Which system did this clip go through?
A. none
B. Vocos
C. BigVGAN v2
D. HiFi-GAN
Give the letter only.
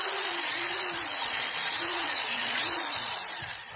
B